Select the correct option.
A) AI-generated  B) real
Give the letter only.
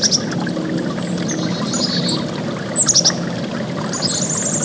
B